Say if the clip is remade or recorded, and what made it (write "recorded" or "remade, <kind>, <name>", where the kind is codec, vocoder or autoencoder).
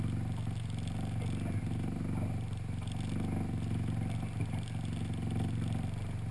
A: recorded